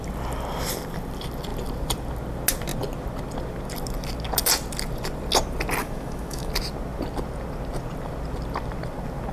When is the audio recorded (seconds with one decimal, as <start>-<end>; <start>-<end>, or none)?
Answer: 0.0-5.8; 6.5-9.3